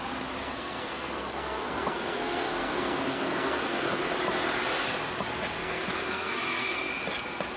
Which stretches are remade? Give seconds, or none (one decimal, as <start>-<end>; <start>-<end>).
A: 0.4-4.0; 5.6-6.9